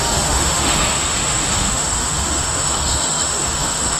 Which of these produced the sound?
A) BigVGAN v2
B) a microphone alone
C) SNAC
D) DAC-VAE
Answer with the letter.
D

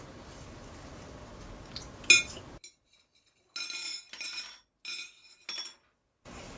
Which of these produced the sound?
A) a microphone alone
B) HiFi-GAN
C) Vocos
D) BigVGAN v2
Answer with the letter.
A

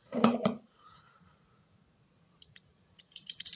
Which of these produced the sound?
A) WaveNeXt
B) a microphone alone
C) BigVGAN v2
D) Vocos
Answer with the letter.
D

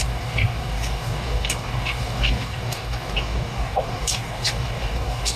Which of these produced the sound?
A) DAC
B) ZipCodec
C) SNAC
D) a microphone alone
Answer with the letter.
A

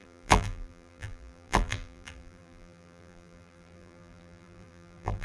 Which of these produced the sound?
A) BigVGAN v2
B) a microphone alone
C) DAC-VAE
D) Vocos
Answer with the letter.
A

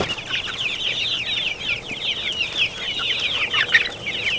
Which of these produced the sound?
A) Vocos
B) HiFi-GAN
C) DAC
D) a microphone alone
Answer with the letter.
D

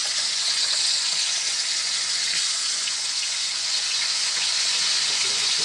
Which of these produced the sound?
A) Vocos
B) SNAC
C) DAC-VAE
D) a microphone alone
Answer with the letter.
A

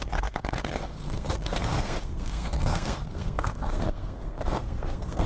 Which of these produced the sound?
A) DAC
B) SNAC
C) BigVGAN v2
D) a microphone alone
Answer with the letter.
B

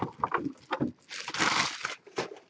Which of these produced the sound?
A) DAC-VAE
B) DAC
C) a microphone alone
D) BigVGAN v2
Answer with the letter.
C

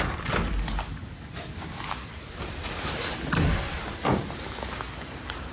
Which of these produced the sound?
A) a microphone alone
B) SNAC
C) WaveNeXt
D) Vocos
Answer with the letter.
A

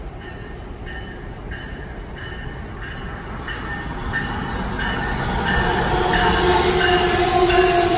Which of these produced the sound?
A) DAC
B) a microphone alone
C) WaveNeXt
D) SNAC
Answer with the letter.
B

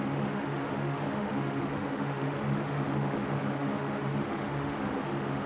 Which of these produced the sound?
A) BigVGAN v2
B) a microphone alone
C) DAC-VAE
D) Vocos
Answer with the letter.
C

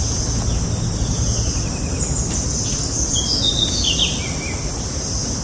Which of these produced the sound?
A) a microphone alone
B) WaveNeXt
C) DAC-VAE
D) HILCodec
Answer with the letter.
A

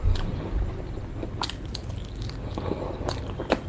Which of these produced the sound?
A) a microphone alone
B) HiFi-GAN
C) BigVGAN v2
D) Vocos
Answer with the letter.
A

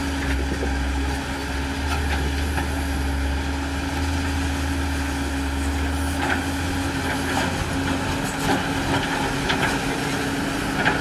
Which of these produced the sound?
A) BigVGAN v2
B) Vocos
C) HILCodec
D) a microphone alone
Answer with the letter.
D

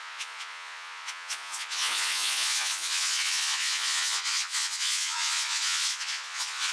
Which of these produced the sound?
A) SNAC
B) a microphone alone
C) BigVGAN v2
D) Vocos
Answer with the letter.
D